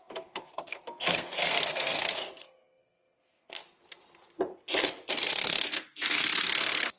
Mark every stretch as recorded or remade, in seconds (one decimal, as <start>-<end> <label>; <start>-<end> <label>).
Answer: 0.0-3.6 remade; 3.6-5.1 recorded; 5.1-7.0 remade